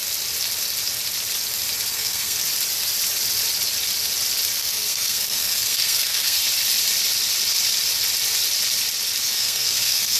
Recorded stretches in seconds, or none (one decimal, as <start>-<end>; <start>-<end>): 0.0-1.9; 2.4-4.6; 6.4-9.2